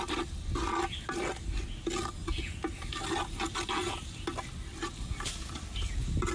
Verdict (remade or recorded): recorded